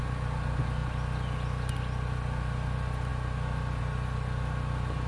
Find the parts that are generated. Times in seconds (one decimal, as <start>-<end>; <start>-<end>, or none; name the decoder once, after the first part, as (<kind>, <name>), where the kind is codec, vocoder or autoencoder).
none